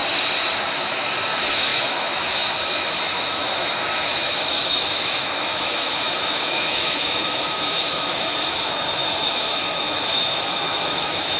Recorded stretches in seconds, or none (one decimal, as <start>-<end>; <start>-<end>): 0.0-0.7